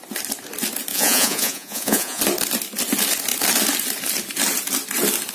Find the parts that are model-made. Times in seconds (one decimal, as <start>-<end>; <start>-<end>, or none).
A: 0.9-2.2